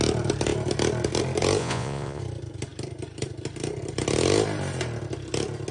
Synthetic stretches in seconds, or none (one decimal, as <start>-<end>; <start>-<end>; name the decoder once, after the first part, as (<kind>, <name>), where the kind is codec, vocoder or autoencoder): 1.6-2.2 (vocoder, Vocos)